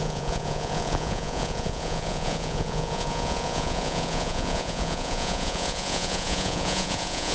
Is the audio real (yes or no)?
no